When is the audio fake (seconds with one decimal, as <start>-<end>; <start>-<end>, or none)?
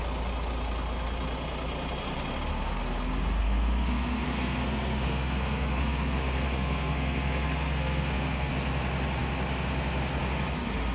3.4-8.5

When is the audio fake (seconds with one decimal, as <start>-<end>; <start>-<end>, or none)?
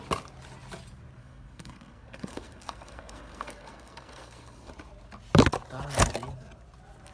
1.2-4.7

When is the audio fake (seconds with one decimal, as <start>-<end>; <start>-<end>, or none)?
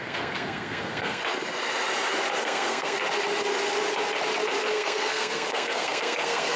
0.0-1.2; 2.4-3.0; 4.7-6.6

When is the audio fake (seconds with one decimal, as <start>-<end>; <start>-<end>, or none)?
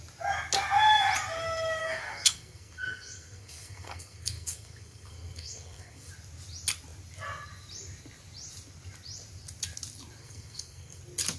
1.8-6.1; 10.2-11.0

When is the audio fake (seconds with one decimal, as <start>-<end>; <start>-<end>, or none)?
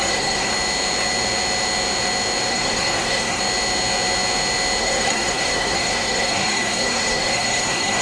0.0-0.5; 2.5-3.4; 4.8-8.0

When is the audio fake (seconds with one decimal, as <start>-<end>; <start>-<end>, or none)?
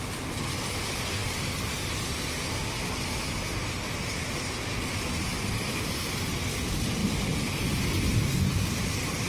none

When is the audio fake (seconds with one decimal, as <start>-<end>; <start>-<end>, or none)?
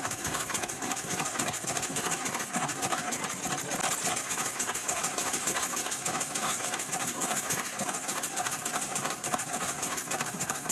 0.0-3.2; 4.1-10.7